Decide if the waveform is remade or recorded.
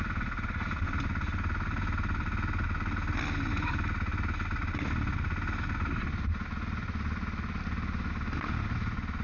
recorded